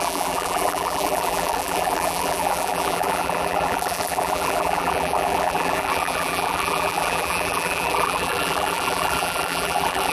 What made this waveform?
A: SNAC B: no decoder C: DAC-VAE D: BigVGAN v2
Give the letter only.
D